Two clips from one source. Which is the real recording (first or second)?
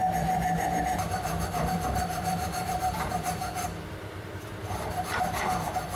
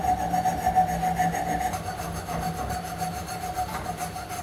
second